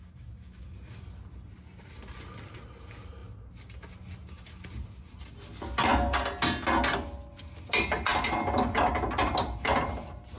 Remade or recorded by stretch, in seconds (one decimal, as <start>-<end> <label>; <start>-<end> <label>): 0.0-10.4 recorded

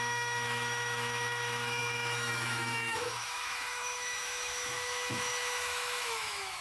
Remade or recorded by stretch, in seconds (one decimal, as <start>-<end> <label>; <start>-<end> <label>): 0.0-6.6 remade

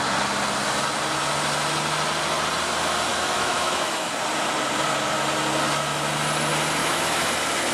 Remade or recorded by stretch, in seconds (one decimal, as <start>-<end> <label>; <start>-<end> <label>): 0.0-3.1 recorded; 3.1-4.1 remade; 4.1-6.8 recorded; 6.8-7.3 remade; 7.3-7.7 recorded